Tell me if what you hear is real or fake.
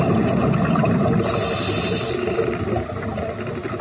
real